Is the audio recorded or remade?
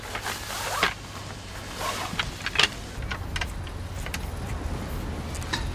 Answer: recorded